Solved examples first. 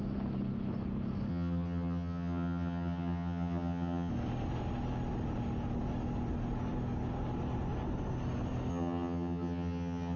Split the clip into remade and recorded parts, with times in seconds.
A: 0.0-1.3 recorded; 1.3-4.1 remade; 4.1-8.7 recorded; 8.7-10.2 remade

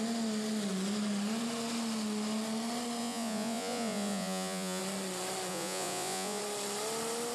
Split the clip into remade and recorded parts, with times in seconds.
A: 0.0-3.0 recorded; 3.0-4.8 remade; 4.8-5.5 recorded; 5.5-6.4 remade; 6.4-7.3 recorded

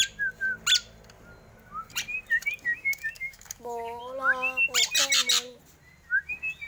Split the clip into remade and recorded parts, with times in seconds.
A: 0.0-2.7 recorded; 2.7-4.0 remade; 4.0-6.7 recorded